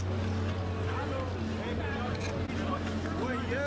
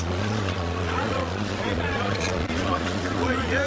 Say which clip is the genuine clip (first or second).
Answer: first